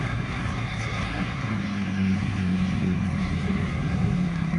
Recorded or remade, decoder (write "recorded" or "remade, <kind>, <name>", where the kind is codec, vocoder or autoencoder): remade, codec, SNAC